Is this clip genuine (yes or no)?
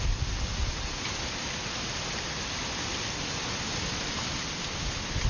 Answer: yes